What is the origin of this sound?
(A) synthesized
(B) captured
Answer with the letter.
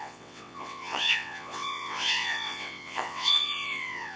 A